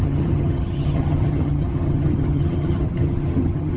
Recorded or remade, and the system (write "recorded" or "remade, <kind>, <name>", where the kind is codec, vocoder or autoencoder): remade, vocoder, HiFi-GAN